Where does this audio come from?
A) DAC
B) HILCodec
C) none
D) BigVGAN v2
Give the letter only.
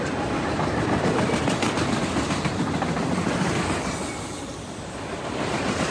C